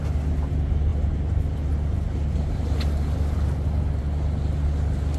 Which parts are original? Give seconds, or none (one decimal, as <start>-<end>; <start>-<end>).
0.0-5.2